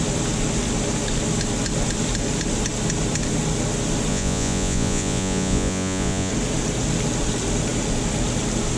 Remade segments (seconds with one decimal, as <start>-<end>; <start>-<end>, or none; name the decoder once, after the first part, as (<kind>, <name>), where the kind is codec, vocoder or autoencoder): 4.1-6.3 (vocoder, Vocos)

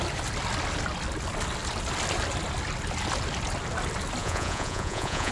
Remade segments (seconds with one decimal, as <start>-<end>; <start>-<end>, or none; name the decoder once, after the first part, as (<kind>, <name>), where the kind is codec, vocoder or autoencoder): 4.2-5.3 (vocoder, Vocos)